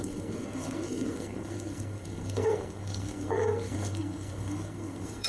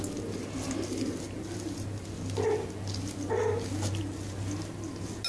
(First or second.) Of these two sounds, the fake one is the first